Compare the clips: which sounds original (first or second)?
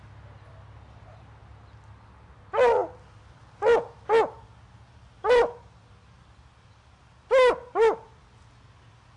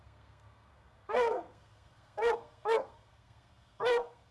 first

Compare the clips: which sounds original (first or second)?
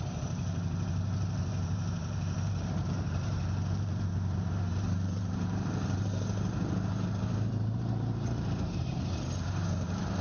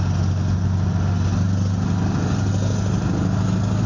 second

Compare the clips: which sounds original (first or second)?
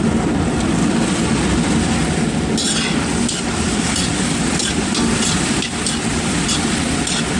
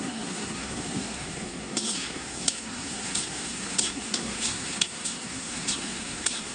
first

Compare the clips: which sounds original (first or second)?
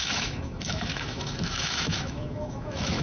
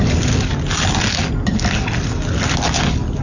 second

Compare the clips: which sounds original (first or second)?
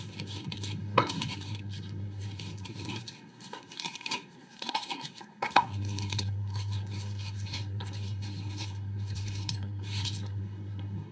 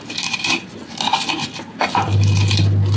second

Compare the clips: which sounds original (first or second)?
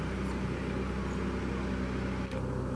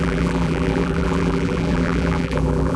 first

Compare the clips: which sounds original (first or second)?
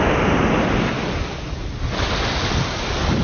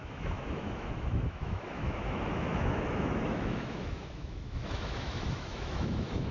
first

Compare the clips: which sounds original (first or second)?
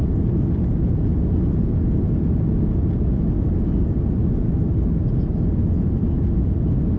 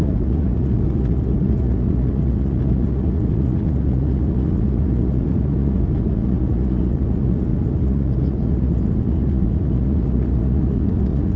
first